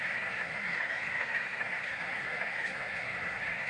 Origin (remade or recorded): remade